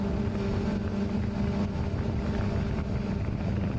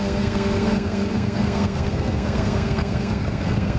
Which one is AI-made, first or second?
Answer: second